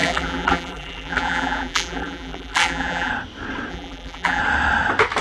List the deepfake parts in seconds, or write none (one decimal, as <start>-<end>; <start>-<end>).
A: 0.0-3.1; 3.7-4.4